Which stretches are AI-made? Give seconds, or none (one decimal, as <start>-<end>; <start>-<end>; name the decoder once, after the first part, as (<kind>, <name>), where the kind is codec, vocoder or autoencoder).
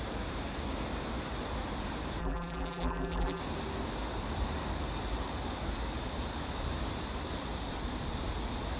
2.2-3.4 (vocoder, BigVGAN v2)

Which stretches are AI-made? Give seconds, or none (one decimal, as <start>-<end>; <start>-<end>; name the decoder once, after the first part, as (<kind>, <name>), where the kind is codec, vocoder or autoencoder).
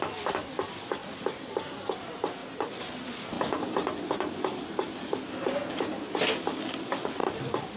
0.0-2.4 (vocoder, BigVGAN v2); 6.3-7.8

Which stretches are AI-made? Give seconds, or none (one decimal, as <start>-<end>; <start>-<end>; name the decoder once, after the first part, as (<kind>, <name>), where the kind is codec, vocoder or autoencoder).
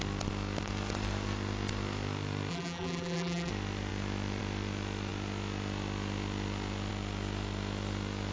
2.5-3.5 (vocoder, BigVGAN v2)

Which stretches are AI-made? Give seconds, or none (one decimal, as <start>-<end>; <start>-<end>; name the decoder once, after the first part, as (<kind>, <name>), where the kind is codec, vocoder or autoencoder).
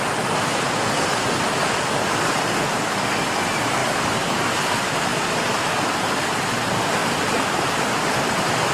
3.8-4.5 (vocoder, BigVGAN v2)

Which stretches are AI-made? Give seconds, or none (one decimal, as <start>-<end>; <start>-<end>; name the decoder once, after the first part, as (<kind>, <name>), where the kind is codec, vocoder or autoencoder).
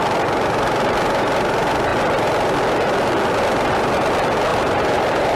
4.5-5.4 (vocoder, BigVGAN v2)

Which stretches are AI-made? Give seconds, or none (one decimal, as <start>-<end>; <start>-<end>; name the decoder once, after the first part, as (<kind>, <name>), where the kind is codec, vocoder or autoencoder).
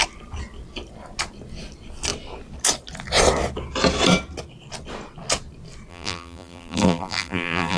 5.9-7.8 (vocoder, BigVGAN v2)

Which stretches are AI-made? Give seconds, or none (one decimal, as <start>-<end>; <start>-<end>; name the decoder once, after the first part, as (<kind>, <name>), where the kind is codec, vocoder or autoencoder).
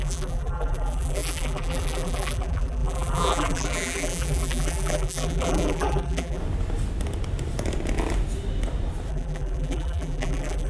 0.0-6.4 (vocoder, BigVGAN v2); 9.1-10.7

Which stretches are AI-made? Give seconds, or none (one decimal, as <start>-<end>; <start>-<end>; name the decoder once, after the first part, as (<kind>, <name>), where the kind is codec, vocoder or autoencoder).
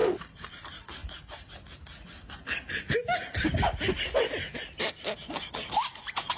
0.0-1.0 (vocoder, BigVGAN v2); 4.8-6.4